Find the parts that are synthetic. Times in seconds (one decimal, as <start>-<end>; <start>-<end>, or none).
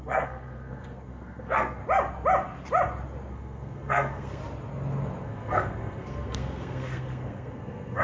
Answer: 0.0-1.8; 3.3-4.4; 5.2-8.0